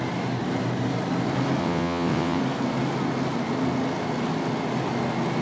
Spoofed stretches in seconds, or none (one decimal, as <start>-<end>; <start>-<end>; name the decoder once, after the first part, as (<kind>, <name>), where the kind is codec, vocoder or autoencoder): 1.6-2.4 (vocoder, WaveNeXt)